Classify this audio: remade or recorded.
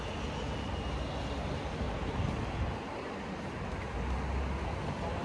recorded